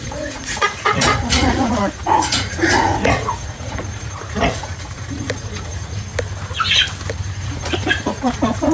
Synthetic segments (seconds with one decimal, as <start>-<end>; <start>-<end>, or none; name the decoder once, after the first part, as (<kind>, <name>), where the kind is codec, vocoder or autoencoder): 0.0-6.1 (vocoder, Vocos); 7.1-8.7

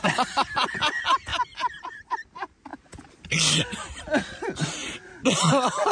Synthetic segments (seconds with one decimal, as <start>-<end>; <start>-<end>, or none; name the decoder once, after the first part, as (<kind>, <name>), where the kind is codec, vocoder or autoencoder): 1.3-1.8 (vocoder, BigVGAN v2); 4.8-5.4

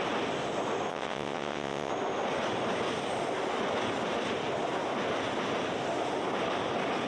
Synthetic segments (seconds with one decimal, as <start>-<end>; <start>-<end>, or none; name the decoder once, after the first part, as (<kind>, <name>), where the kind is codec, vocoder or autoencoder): 0.9-1.9 (vocoder, WaveNeXt)

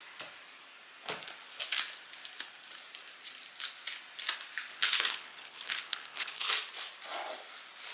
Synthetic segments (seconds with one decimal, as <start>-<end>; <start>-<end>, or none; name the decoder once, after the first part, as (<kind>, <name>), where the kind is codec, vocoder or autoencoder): 4.7-6.5 (codec, HILCodec)

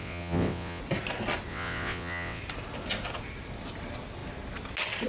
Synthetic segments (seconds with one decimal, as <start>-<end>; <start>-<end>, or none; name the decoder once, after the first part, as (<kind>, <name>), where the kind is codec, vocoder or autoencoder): 0.0-0.8 (vocoder, WaveNeXt); 1.5-2.4

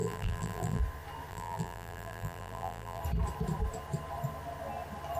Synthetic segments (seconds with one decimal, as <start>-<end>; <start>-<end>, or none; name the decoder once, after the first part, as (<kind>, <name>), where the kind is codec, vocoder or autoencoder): 0.0-0.8 (vocoder, BigVGAN v2); 1.3-3.0

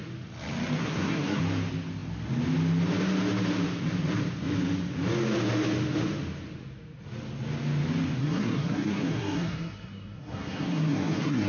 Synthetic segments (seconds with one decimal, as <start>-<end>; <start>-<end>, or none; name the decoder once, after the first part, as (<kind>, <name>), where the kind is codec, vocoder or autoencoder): 0.8-1.4 (codec, SNAC); 8.2-11.5

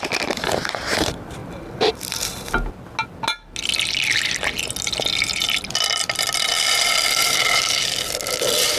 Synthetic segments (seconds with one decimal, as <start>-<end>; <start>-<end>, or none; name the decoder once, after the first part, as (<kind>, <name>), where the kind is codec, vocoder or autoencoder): 0.0-1.4 (vocoder, BigVGAN v2); 6.0-8.8